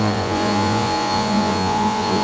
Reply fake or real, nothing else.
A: fake